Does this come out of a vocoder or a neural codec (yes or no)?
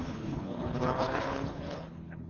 yes